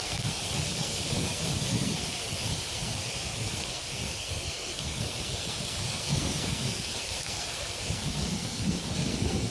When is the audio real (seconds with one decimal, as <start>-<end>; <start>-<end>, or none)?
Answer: none